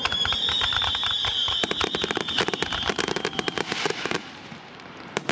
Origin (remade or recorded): remade